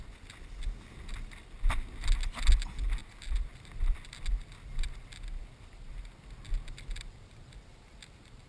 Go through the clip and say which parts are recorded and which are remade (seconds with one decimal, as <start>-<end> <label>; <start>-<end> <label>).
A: 0.0-8.5 recorded